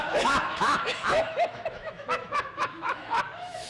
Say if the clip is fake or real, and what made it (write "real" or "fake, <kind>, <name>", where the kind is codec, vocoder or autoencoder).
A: fake, autoencoder, DAC-VAE